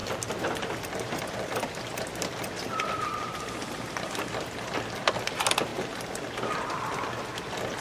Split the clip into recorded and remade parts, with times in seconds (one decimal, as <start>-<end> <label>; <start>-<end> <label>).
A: 0.0-7.8 recorded